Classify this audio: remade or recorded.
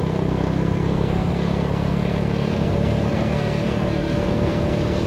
remade